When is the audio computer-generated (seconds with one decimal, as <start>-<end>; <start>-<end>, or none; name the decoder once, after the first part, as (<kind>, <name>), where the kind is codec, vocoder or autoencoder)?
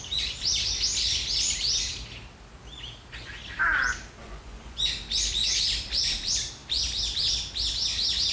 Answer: 4.2-4.9 (vocoder, Vocos)